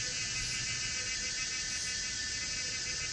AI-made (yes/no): no